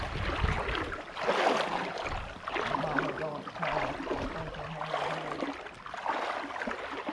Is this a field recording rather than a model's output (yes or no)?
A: yes